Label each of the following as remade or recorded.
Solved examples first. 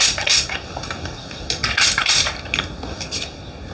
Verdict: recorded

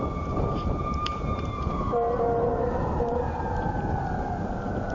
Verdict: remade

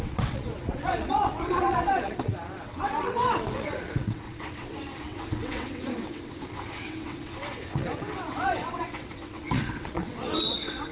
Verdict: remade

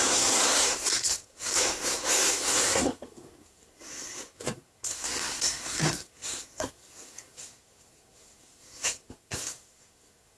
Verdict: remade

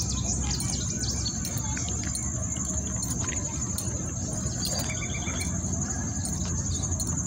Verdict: recorded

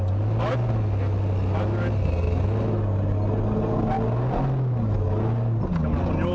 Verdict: recorded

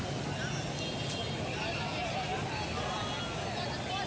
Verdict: recorded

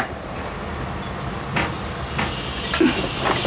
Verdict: recorded